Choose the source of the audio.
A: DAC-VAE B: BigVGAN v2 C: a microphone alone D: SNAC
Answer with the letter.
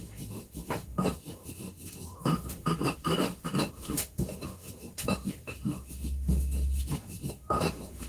A